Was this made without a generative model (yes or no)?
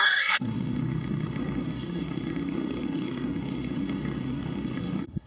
no